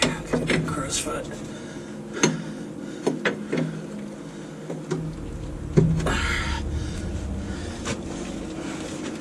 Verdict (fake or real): real